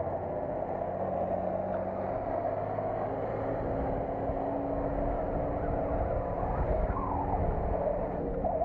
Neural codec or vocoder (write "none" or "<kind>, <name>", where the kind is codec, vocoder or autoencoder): none